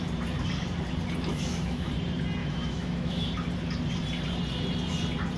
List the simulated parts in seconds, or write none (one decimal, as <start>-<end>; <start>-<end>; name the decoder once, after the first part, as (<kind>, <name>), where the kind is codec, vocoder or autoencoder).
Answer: 1.3-1.9 (autoencoder, DAC-VAE); 2.4-3.3